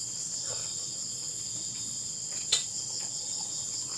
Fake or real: fake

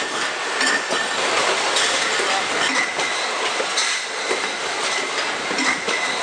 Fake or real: real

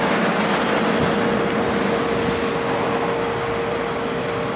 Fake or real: real